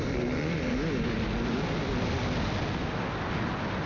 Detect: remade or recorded recorded